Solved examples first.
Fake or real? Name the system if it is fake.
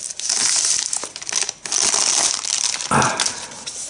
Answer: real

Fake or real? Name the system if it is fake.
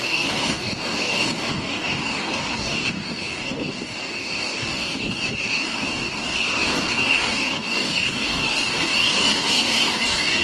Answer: fake, codec, DAC